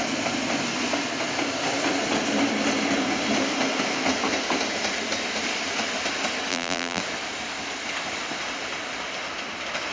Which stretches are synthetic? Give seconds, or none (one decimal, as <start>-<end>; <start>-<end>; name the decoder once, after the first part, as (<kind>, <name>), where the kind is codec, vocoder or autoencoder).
6.5-7.0 (vocoder, BigVGAN v2)